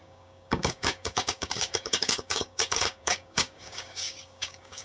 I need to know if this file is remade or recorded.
remade